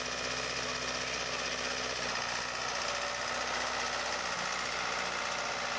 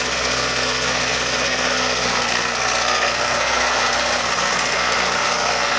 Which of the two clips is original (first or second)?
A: first